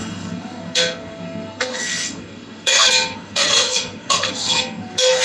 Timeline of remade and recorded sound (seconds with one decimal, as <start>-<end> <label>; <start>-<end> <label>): 0.0-5.2 remade